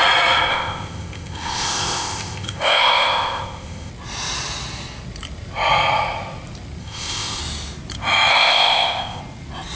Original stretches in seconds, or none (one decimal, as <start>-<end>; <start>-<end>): 0.0-0.5; 3.9-6.8; 7.4-8.3; 9.2-9.8